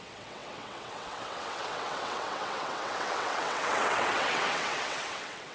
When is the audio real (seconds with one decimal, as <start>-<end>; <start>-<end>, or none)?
none